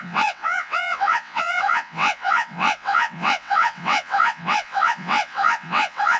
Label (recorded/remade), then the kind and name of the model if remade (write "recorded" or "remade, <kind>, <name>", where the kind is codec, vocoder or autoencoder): remade, vocoder, WaveNeXt